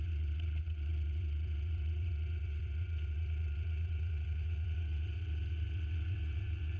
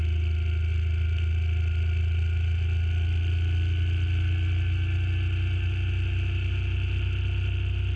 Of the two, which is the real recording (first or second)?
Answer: second